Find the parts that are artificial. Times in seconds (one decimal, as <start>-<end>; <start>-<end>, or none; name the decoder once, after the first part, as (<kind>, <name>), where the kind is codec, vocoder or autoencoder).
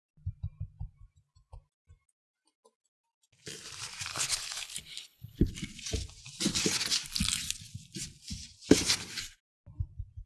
4.1-5.5 (codec, HILCodec)